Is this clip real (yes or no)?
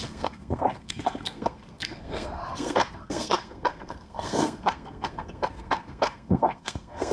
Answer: no